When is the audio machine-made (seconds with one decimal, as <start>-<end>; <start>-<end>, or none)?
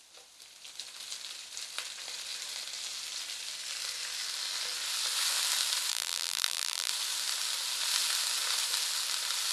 5.9-6.9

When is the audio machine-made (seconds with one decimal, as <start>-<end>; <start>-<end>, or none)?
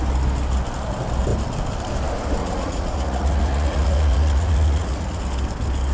2.4-5.2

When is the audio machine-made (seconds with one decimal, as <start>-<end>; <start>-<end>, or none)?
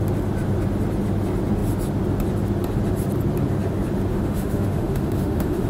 4.1-5.7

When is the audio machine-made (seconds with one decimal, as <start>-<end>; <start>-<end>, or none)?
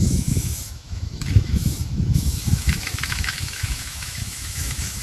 0.0-5.0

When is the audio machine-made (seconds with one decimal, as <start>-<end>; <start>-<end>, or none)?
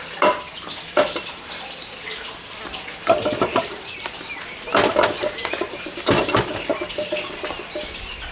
none